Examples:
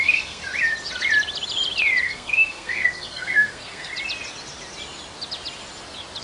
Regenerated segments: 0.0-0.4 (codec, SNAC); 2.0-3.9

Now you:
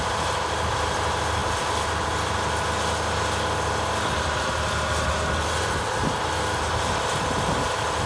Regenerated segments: none

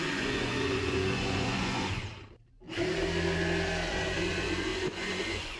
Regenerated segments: 0.0-2.0 (vocoder, Vocos); 3.9-5.6